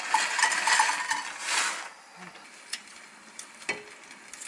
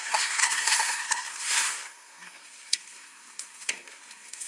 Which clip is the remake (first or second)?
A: second